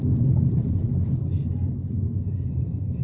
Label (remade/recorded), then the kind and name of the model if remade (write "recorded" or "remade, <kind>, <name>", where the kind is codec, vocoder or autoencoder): recorded